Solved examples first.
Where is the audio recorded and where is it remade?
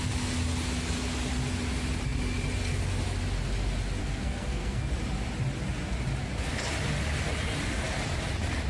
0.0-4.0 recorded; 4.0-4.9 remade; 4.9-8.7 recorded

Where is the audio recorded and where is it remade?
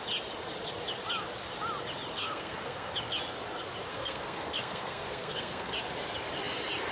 0.0-2.2 recorded; 2.2-2.9 remade; 2.9-3.9 recorded; 3.9-5.7 remade; 5.7-6.9 recorded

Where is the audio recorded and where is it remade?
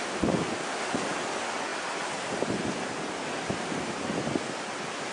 0.0-1.7 recorded; 1.7-2.4 remade; 2.4-5.1 recorded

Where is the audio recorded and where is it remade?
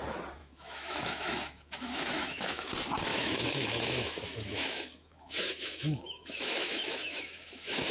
0.0-0.4 recorded; 0.4-2.7 remade; 2.7-3.1 recorded; 3.1-7.9 remade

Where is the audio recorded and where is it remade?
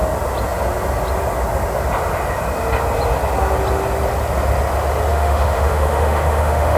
0.0-5.1 recorded; 5.1-6.8 remade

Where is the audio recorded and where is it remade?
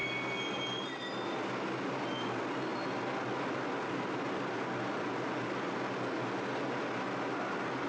0.0-7.9 recorded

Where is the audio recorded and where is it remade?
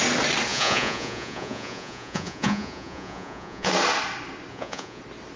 0.0-0.5 recorded; 0.5-3.7 remade; 3.7-4.5 recorded; 4.5-5.0 remade; 5.0-5.4 recorded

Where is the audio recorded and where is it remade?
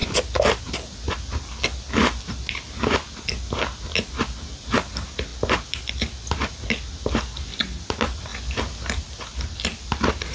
0.0-5.3 recorded; 5.3-5.9 remade; 5.9-10.3 recorded